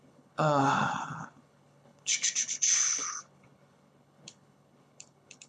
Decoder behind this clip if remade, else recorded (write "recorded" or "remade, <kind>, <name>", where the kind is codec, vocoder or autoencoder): remade, codec, HILCodec